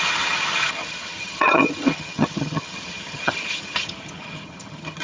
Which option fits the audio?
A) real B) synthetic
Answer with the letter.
B